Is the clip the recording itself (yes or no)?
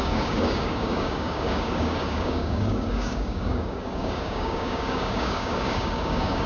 no